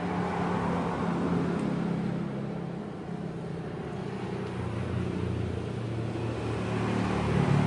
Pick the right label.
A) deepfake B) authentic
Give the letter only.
B